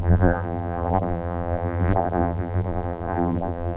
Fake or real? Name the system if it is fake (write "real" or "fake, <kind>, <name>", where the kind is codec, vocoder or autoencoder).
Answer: fake, vocoder, BigVGAN v2